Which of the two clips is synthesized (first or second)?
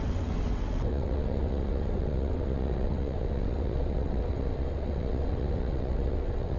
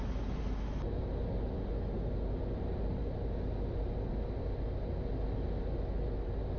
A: first